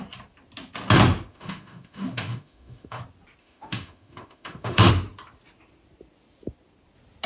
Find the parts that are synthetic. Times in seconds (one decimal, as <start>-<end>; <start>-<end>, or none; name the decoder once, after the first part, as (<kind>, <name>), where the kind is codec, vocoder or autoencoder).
1.3-3.0 (autoencoder, DAC-VAE); 3.4-4.9